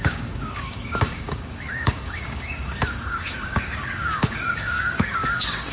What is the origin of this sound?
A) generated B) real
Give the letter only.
A